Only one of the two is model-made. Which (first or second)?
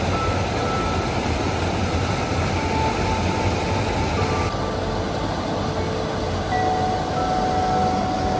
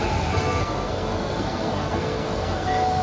second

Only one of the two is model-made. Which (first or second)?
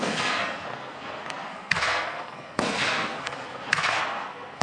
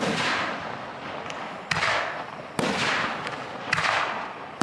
first